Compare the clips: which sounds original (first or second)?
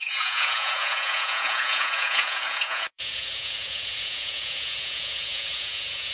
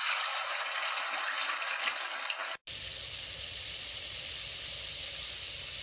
second